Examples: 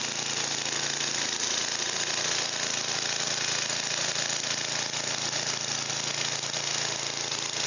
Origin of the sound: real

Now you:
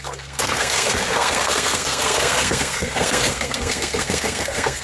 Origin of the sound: fake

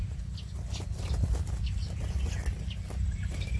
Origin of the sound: real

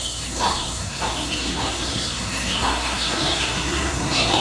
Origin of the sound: fake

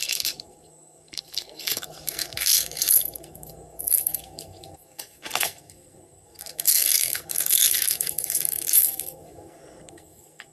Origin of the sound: fake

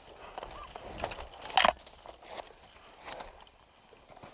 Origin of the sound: real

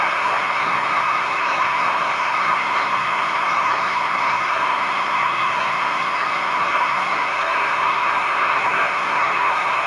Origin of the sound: fake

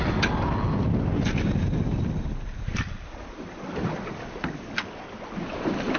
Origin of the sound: real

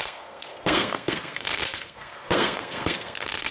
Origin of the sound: fake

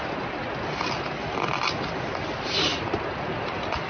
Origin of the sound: real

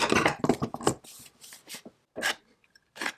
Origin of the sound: real